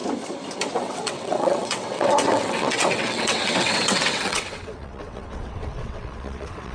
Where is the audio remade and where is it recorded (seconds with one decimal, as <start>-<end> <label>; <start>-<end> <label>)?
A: 0.0-0.8 recorded; 0.8-6.7 remade